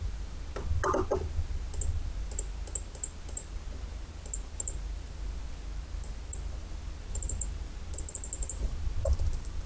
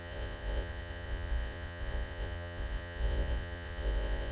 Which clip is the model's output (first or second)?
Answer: second